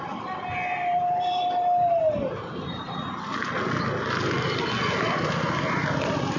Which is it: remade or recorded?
recorded